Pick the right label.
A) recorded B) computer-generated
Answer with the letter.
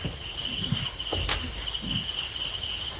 A